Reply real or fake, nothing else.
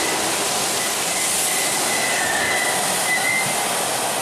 real